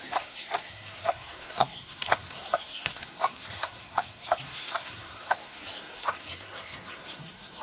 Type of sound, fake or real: fake